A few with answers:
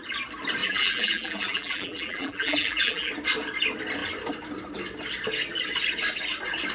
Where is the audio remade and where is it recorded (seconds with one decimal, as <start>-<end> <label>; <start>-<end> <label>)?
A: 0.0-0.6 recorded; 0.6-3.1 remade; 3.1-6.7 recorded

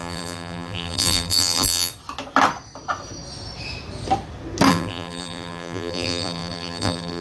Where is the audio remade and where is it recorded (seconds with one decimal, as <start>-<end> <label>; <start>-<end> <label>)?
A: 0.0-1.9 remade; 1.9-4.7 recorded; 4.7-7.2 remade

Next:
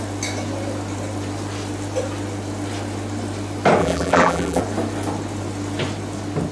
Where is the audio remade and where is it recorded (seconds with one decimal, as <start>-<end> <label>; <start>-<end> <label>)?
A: 0.0-3.8 recorded; 3.8-4.6 remade; 4.6-6.5 recorded

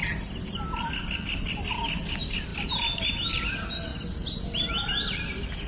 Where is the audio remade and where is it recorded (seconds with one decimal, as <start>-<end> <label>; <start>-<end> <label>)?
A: 0.0-5.7 recorded

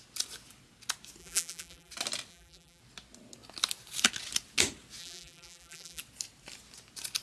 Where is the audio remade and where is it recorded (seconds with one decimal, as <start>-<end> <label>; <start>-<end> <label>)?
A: 0.0-1.2 recorded; 1.2-1.9 remade; 1.9-2.3 recorded; 2.3-2.8 remade; 2.8-5.0 recorded; 5.0-6.0 remade; 6.0-7.2 recorded

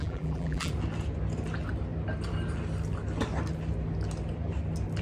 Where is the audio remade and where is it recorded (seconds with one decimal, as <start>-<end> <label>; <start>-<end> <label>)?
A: 0.0-0.7 remade; 0.7-5.0 recorded

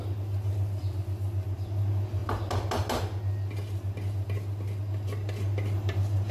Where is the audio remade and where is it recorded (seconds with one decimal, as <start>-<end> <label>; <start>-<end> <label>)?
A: 0.0-6.3 recorded

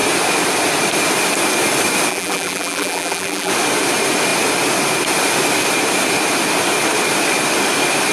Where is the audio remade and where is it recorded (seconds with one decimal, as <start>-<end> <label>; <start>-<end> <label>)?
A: 0.0-2.1 recorded; 2.1-3.5 remade; 3.5-8.1 recorded